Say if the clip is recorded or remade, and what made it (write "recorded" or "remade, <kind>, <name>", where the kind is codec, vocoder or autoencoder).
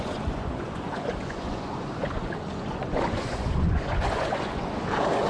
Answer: remade, vocoder, Vocos